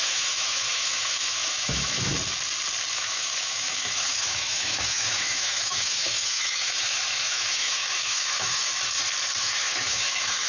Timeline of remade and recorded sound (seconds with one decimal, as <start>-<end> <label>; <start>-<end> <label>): 0.0-2.1 remade; 2.1-2.9 recorded; 2.9-8.7 remade; 8.7-9.4 recorded; 9.4-10.5 remade